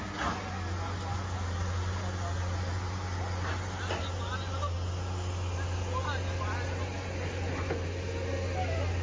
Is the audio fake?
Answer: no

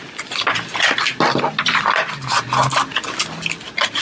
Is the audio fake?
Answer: no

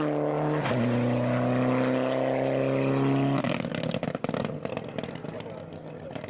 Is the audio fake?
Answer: no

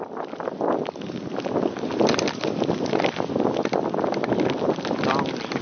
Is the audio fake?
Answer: no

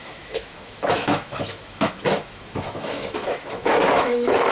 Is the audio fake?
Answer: yes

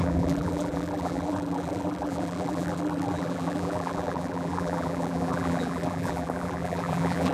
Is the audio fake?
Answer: yes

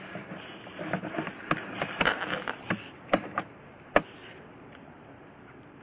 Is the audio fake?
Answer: no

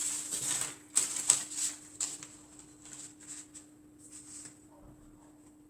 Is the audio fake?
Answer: no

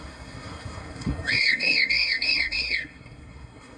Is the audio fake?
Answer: yes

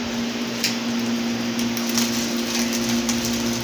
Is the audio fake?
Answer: no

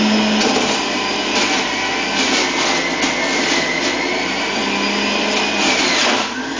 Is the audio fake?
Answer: no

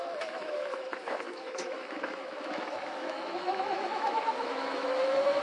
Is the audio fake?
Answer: yes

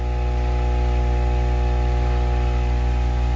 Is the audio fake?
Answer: no